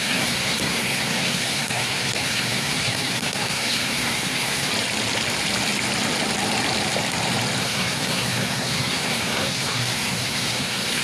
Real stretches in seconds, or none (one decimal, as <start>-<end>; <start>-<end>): 4.7-7.6